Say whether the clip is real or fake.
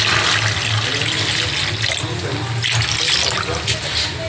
real